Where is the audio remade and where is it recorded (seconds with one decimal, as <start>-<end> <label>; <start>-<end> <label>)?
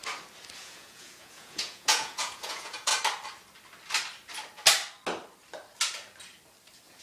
0.0-0.6 recorded; 0.6-2.9 remade; 2.9-7.0 recorded